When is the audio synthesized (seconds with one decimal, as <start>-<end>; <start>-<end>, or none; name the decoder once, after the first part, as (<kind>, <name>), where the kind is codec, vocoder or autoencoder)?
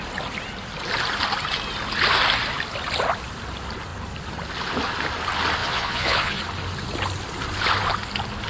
5.6-6.4 (vocoder, Vocos)